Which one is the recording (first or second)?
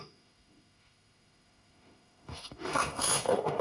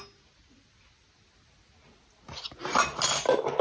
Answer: second